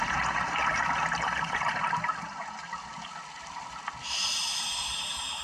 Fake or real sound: real